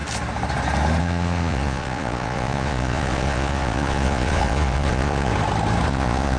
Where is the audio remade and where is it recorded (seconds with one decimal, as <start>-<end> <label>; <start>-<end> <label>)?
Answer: 0.0-1.0 recorded; 1.0-5.3 remade; 5.3-5.9 recorded; 5.9-6.4 remade